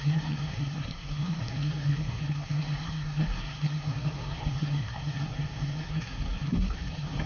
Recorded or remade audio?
remade